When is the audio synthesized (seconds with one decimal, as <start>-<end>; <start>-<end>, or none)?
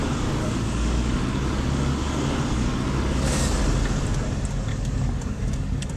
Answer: 0.0-3.6; 4.7-6.0